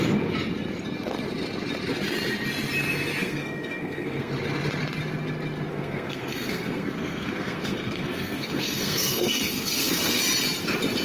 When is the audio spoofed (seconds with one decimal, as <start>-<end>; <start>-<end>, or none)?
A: 3.2-4.3; 5.7-10.2

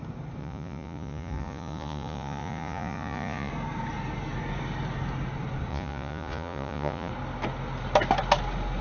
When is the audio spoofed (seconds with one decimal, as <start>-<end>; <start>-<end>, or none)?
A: 0.4-3.5; 5.7-7.1

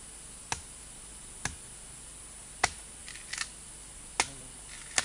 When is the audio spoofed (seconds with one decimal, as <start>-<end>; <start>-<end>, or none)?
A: none